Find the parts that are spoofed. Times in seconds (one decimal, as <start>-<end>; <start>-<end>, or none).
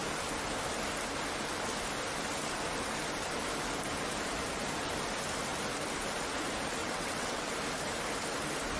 6.8-7.5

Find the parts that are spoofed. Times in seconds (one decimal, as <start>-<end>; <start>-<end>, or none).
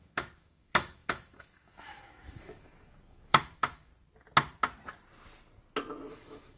0.0-3.9; 6.1-6.6